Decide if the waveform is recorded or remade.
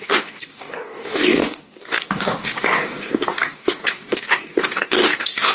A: remade